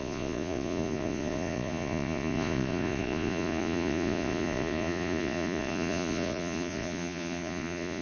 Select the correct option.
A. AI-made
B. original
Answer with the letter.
A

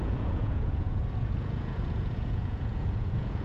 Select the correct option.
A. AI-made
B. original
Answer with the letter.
A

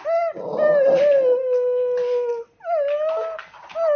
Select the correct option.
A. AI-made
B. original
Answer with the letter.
B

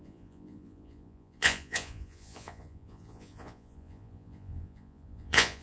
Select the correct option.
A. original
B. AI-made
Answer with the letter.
B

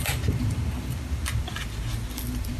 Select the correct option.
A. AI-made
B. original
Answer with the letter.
B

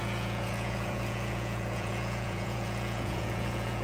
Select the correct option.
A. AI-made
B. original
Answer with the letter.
A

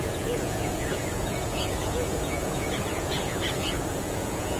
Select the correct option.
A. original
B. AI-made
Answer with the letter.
B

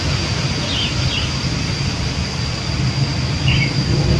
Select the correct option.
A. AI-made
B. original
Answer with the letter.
B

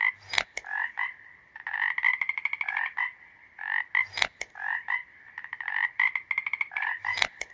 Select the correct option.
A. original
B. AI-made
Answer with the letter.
A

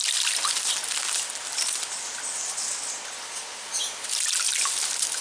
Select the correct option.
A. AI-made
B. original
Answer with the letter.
B